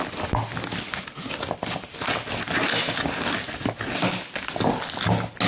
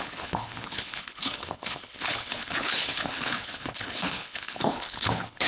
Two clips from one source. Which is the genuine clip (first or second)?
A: first